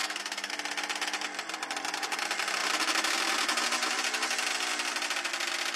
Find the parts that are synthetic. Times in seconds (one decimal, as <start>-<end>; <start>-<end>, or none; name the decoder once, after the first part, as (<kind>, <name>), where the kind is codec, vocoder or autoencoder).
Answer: 0.0-0.5 (codec, SNAC)